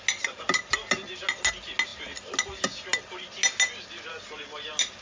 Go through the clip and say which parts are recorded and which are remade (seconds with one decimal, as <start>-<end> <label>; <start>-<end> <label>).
0.0-5.0 recorded